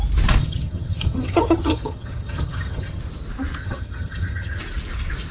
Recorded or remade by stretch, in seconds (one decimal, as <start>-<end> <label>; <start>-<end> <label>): 0.0-0.4 recorded; 0.4-3.0 remade; 3.0-3.6 recorded; 3.6-4.6 remade; 4.6-5.3 recorded